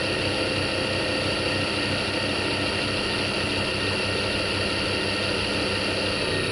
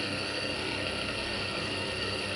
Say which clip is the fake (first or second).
second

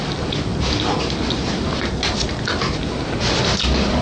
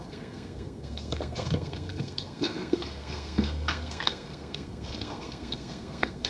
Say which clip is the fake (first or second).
second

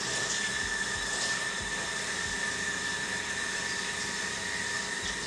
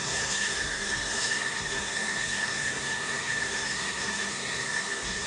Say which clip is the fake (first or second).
second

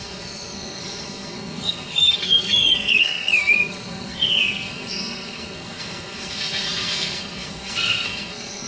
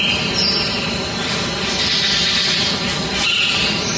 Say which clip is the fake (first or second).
first